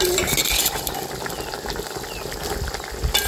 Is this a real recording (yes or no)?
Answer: yes